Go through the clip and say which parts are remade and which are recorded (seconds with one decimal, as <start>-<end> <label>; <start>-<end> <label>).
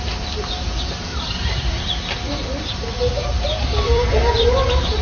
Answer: 0.0-1.1 recorded; 1.1-4.1 remade; 4.1-5.0 recorded